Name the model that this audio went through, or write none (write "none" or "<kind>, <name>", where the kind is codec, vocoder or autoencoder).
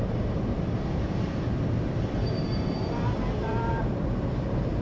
vocoder, BigVGAN v2